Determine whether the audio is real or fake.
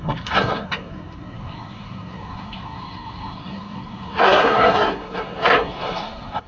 fake